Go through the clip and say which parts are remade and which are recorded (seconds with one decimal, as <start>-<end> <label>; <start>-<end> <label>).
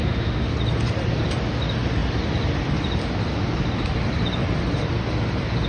0.0-0.5 remade; 0.5-5.7 recorded